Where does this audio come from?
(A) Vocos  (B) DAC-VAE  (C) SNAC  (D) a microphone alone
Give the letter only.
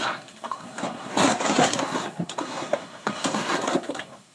C